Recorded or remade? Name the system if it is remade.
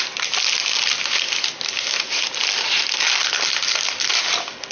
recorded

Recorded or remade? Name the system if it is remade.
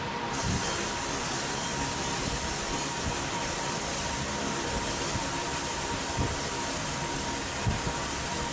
remade, vocoder, BigVGAN v2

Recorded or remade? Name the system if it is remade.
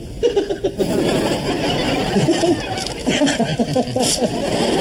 recorded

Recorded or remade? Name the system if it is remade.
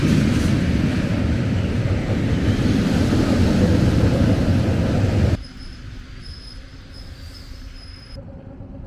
recorded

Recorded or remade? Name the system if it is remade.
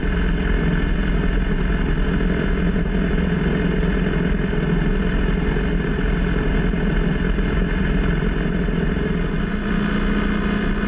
recorded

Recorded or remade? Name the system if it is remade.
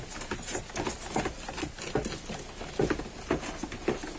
recorded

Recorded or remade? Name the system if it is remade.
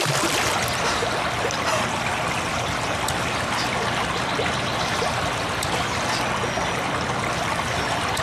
recorded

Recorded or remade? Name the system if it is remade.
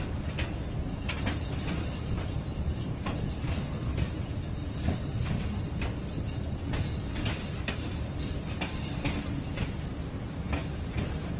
recorded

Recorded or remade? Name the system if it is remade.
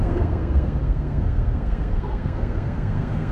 remade, codec, SNAC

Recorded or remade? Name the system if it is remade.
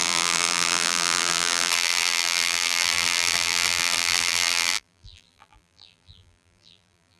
remade, vocoder, BigVGAN v2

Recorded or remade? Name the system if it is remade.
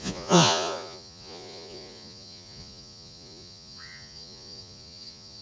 remade, vocoder, Vocos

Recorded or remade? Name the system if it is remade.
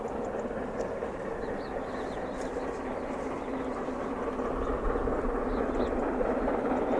recorded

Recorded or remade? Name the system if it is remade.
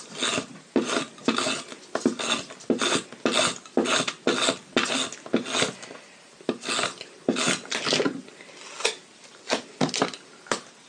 recorded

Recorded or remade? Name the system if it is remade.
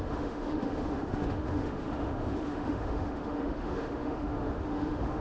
remade, autoencoder, DAC-VAE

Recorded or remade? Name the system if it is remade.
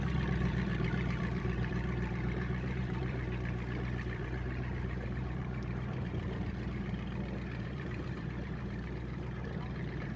remade, vocoder, BigVGAN v2